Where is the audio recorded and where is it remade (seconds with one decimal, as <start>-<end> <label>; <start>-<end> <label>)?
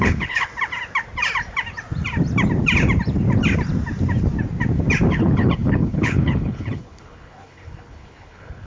0.0-0.5 remade; 0.5-5.1 recorded; 5.1-8.7 remade